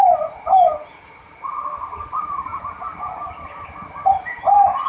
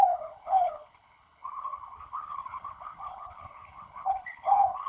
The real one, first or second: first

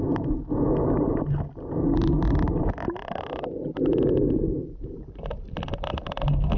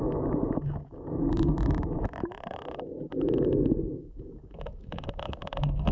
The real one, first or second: first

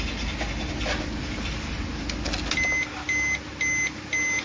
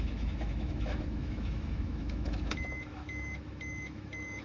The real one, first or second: first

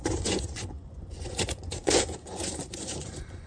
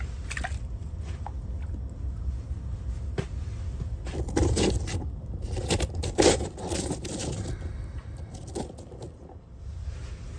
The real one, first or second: second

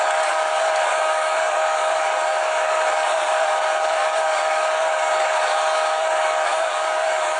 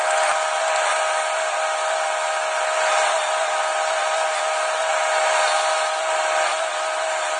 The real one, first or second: second